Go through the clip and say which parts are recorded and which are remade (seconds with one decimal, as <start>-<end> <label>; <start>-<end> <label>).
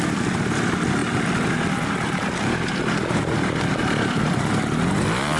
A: 0.0-5.4 recorded